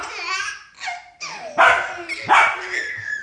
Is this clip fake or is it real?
real